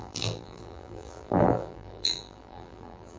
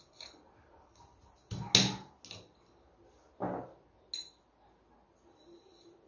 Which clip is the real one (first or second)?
second